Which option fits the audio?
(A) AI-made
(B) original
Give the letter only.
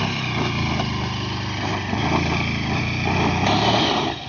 B